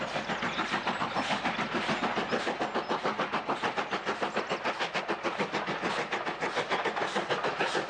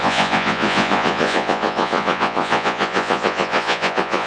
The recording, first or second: first